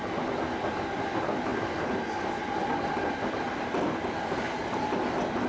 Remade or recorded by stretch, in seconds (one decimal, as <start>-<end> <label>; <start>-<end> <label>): 0.0-5.5 recorded